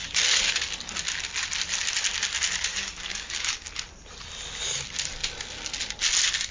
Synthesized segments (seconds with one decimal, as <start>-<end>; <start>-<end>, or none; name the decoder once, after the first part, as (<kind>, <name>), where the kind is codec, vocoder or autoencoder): 2.7-3.7 (codec, DAC)